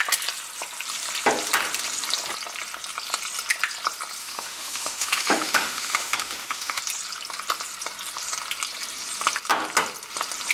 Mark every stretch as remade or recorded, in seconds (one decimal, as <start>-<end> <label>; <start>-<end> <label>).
0.0-4.2 recorded; 4.2-6.8 remade; 6.8-10.5 recorded